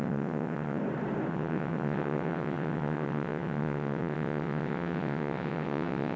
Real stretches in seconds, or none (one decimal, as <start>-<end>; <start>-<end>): 0.8-1.3